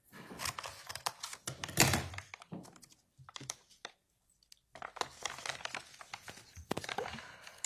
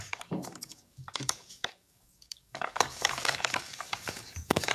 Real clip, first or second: first